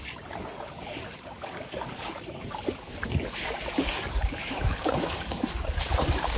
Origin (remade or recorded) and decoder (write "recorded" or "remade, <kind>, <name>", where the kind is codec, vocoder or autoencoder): remade, codec, DAC